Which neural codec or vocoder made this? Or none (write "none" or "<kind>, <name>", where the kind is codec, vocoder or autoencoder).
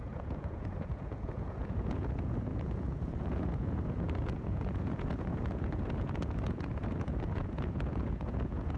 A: vocoder, Vocos